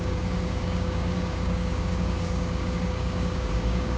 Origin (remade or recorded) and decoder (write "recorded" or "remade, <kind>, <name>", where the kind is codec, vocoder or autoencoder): remade, codec, DAC